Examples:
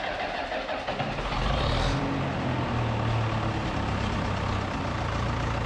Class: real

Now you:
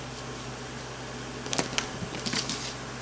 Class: real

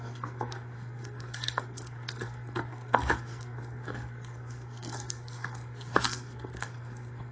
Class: fake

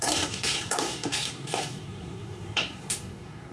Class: fake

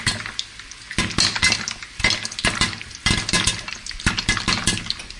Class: real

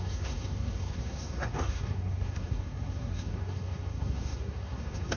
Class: fake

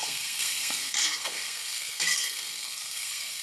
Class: fake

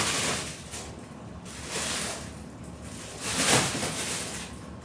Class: real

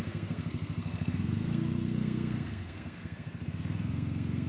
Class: fake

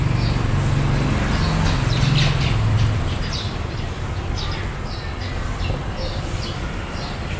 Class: real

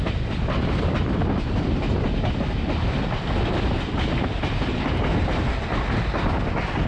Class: real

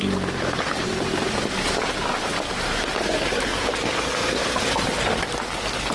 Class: real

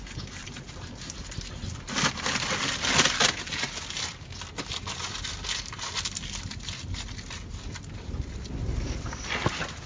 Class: real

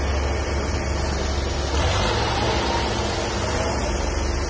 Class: real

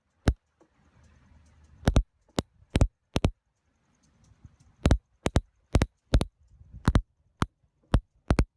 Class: real